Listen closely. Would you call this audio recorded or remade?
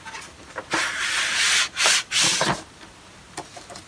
recorded